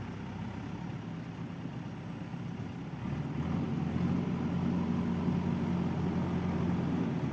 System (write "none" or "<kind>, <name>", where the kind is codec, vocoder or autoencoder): none